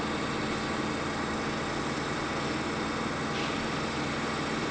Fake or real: real